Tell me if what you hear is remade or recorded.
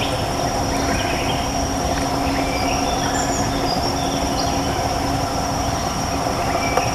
recorded